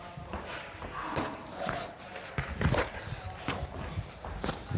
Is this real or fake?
real